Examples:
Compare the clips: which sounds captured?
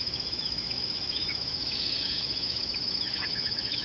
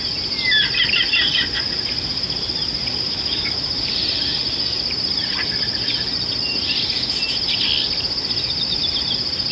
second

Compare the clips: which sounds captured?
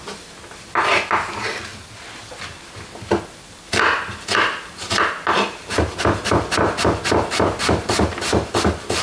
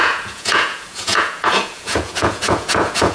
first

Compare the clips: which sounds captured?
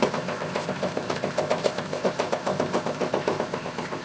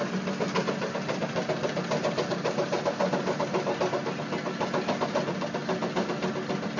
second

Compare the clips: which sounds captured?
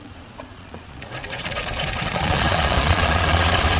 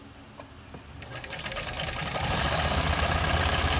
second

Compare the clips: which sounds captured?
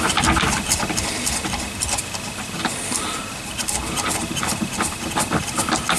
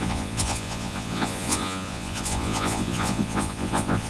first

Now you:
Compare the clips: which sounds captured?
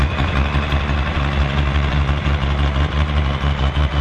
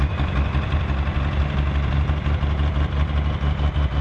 second